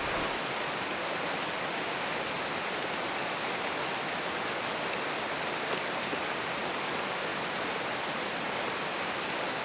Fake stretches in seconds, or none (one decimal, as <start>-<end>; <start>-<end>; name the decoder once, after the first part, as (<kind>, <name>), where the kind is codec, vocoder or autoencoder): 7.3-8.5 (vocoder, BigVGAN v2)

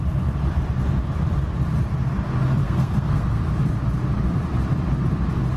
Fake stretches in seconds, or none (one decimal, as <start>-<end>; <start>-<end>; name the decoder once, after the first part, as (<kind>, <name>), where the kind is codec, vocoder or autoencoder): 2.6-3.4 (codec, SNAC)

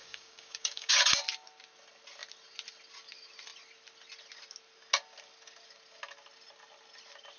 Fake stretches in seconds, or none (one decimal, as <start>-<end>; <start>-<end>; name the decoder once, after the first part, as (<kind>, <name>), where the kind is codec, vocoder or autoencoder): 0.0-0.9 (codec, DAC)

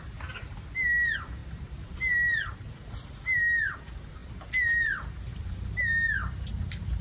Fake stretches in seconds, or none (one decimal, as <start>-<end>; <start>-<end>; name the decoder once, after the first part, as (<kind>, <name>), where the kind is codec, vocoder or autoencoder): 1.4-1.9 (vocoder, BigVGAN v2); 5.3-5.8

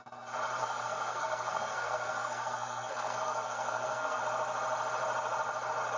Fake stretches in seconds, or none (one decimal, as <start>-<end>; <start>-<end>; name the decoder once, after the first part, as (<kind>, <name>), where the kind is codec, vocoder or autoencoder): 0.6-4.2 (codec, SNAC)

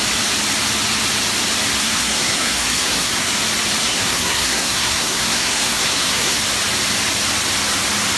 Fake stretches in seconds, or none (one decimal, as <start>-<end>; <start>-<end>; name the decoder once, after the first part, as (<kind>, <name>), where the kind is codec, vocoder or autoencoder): 1.8-3.3 (codec, SNAC); 3.8-6.4

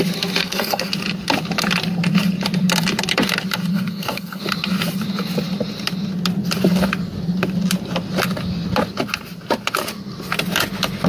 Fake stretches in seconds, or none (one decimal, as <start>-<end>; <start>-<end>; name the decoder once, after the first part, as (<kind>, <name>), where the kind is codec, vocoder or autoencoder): 0.4-0.9 (codec, SNAC); 3.7-4.4